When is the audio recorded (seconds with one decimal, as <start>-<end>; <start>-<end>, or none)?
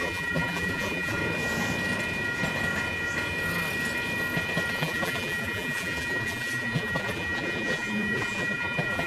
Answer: 1.2-4.7